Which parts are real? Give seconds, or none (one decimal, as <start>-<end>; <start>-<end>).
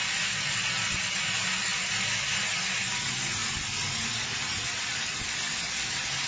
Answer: 0.0-6.3